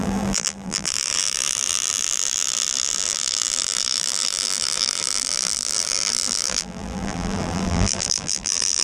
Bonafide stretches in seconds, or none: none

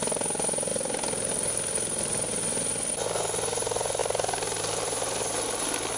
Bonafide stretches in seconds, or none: 0.0-6.0